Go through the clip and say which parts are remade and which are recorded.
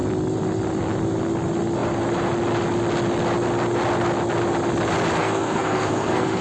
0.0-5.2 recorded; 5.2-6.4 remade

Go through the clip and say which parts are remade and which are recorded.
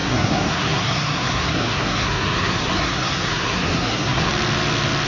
0.0-4.3 remade; 4.3-5.1 recorded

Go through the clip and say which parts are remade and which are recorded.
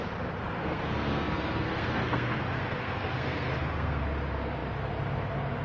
0.0-0.6 recorded; 0.6-4.0 remade; 4.0-5.6 recorded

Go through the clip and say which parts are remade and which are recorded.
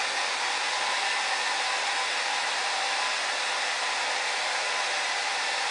0.0-3.4 recorded; 3.4-4.1 remade; 4.1-4.6 recorded; 4.6-5.7 remade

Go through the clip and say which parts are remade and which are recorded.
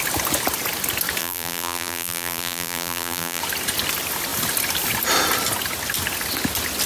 0.0-1.2 recorded; 1.2-3.4 remade; 3.4-6.9 recorded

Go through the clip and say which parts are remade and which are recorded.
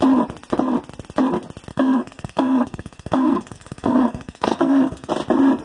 0.0-1.7 recorded; 1.7-5.1 remade; 5.1-5.6 recorded